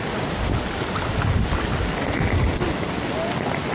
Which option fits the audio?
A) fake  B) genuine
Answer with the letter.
B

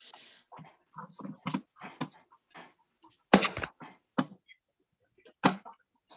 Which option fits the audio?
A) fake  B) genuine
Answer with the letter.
B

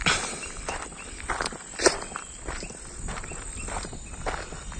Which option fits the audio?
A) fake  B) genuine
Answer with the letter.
A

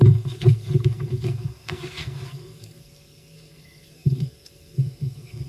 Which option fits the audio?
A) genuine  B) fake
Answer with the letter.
B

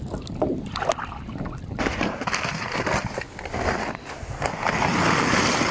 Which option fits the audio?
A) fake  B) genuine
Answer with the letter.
B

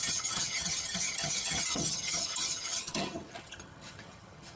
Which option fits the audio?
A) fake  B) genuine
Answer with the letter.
A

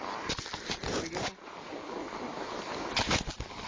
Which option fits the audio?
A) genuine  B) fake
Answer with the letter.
A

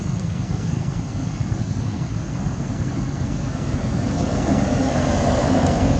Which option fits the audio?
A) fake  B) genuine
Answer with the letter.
A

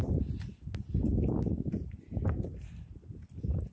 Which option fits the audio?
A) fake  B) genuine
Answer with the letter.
B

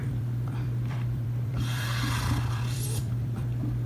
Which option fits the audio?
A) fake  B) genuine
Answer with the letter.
A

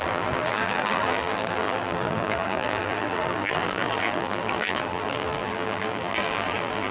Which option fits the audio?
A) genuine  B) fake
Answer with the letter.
B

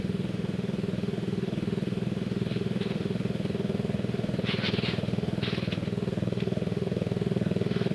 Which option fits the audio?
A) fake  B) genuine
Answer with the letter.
A